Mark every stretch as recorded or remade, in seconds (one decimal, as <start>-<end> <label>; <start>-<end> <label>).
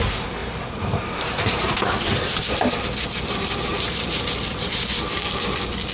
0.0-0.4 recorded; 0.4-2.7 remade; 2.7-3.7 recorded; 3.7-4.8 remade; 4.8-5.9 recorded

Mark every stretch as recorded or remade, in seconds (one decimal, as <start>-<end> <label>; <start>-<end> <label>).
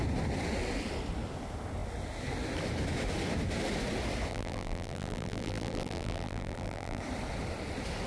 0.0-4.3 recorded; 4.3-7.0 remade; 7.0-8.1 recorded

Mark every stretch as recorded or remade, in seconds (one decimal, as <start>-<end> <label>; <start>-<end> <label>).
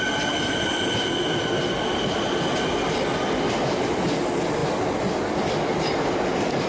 0.0-6.7 recorded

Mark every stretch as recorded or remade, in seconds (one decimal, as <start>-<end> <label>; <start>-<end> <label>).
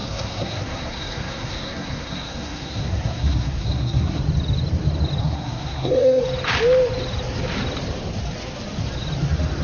0.0-4.2 remade; 4.2-5.2 recorded; 5.2-6.2 remade; 6.2-9.6 recorded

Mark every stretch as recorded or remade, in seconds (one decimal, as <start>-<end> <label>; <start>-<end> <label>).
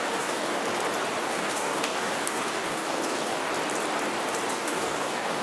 0.0-0.6 remade; 0.6-1.2 recorded; 1.2-3.5 remade; 3.5-4.5 recorded; 4.5-5.4 remade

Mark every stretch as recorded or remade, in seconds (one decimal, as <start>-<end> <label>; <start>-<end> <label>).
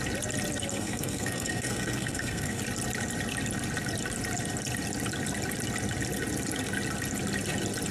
0.0-0.7 recorded; 0.7-2.6 remade; 2.6-7.9 recorded